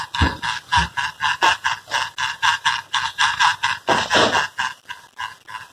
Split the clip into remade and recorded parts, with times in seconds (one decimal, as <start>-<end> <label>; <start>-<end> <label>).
0.0-0.7 recorded; 0.7-4.1 remade; 4.1-5.7 recorded